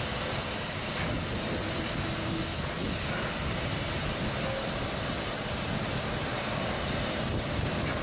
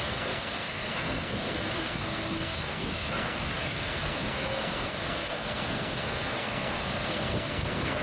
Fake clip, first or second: second